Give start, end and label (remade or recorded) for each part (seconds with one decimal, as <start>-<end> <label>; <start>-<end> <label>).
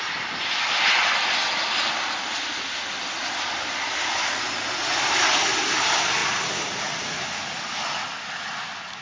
0.0-9.0 recorded